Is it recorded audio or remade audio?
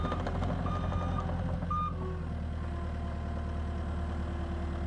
recorded